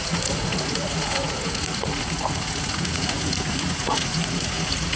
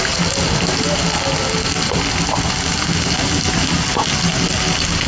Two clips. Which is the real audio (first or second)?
second